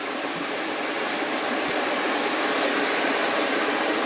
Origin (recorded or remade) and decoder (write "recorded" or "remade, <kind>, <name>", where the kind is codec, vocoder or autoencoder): recorded